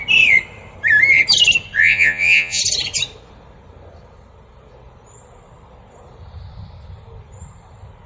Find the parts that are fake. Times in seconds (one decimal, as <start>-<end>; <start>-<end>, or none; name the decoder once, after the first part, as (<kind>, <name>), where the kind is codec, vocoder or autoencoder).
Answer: 1.8-2.6 (vocoder, Vocos)